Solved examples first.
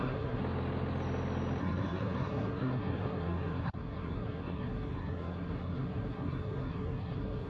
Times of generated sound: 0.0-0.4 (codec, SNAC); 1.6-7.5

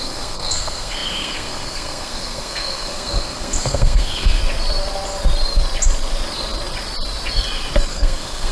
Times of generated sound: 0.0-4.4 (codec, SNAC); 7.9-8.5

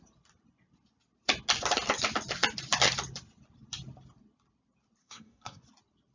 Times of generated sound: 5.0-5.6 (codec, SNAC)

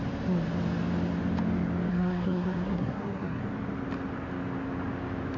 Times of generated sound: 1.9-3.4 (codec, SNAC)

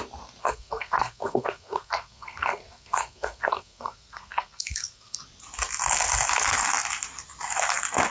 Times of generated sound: 0.4-5.2 (codec, SNAC)